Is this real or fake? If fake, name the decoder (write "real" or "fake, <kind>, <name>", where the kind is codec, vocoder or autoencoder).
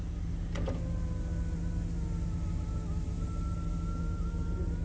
real